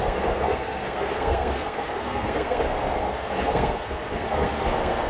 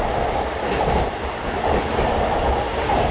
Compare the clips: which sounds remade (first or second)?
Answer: first